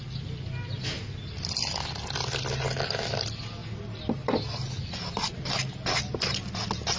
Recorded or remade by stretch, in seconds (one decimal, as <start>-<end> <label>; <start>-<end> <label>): 0.0-7.0 recorded